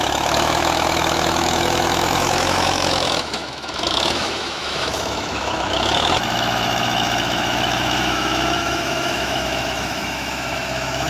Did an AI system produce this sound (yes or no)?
yes